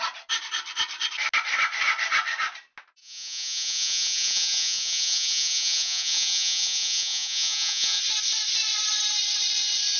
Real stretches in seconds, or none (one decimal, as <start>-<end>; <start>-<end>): 0.0-3.0; 8.0-10.0